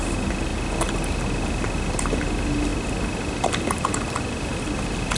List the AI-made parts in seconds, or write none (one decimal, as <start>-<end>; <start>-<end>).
none